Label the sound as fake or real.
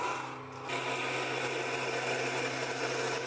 real